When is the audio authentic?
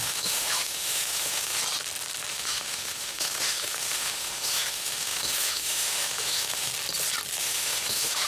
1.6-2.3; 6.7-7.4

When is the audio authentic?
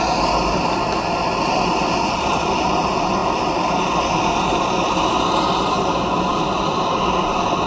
0.0-7.7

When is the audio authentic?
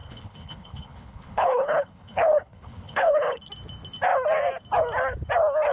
3.4-5.7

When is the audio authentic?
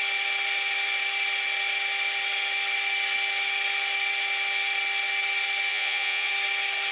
0.0-5.7; 6.3-6.9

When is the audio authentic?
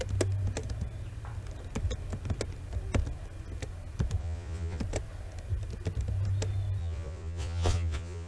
0.0-4.2; 4.8-6.8